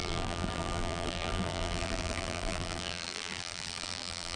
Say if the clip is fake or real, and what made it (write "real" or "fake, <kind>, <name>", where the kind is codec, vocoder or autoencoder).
fake, vocoder, BigVGAN v2